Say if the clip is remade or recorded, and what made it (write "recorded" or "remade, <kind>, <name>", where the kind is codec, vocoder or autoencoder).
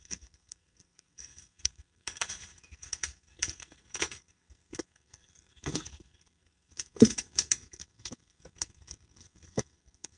remade, codec, SNAC